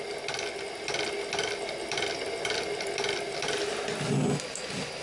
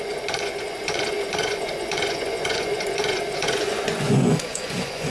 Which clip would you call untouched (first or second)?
first